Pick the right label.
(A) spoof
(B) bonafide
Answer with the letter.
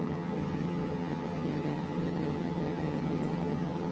A